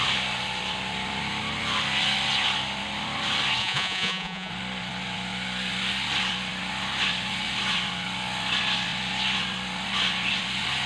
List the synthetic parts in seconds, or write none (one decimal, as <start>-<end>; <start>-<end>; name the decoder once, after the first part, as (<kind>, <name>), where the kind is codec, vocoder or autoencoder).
3.6-4.5 (vocoder, Vocos)